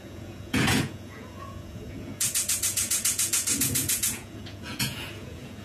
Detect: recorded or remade remade